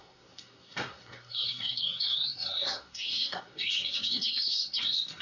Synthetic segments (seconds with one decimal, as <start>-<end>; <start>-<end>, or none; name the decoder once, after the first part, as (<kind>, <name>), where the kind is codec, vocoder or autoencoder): 0.0-5.2 (codec, SNAC)